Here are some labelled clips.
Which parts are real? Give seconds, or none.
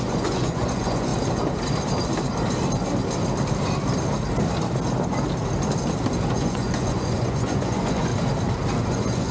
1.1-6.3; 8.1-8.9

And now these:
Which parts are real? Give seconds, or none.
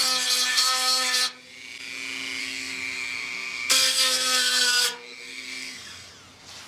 0.0-0.5; 1.2-2.4; 6.1-6.7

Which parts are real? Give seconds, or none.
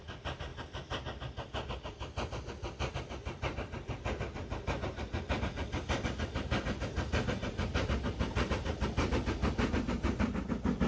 0.0-10.9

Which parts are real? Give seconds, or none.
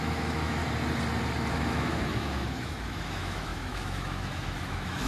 0.6-1.5